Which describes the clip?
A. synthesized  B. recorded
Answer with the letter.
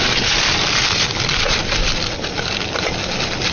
B